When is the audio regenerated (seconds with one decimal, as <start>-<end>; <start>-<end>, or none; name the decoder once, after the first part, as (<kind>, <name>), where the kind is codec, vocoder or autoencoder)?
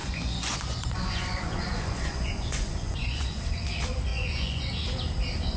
0.0-3.4 (vocoder, Vocos); 4.1-4.7